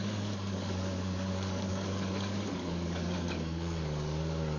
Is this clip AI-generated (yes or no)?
yes